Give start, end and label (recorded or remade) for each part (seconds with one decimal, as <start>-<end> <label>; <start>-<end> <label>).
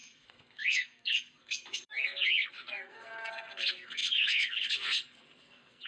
0.0-5.9 remade